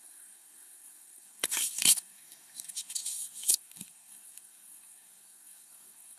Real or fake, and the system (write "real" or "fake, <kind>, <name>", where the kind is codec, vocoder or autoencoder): fake, codec, SNAC